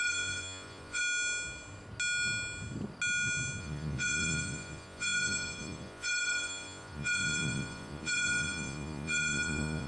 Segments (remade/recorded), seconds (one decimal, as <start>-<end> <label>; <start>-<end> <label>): 0.0-1.0 remade; 1.0-3.6 recorded; 3.6-9.9 remade